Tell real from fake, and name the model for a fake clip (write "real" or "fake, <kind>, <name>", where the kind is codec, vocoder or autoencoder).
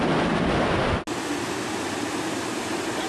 real